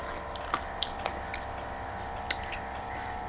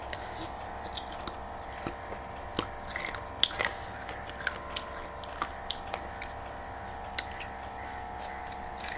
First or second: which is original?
second